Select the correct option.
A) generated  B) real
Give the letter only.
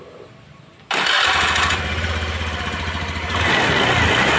B